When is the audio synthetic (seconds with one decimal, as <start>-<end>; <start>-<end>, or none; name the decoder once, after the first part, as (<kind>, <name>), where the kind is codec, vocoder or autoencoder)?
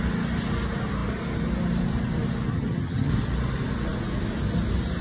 2.5-3.1 (vocoder, HiFi-GAN)